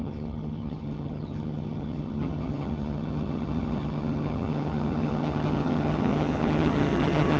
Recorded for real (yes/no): no